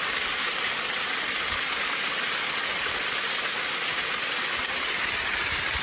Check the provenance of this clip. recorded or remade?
recorded